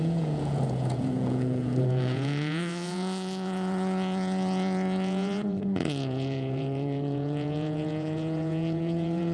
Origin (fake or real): fake